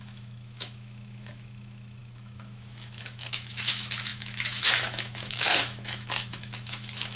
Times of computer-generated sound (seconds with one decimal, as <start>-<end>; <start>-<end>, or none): 0.0-7.2